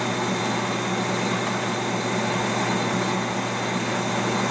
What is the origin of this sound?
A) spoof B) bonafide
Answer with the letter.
B